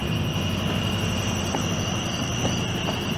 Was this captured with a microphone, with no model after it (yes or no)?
yes